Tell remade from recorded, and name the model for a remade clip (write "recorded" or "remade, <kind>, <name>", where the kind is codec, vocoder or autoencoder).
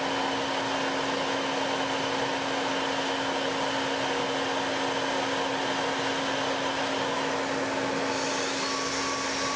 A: recorded